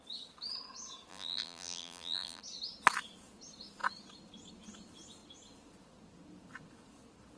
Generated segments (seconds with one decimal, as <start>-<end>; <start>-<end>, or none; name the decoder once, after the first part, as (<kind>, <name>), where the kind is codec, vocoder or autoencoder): 1.1-2.4 (vocoder, BigVGAN v2)